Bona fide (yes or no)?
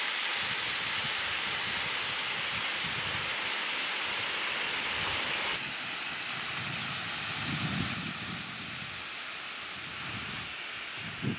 yes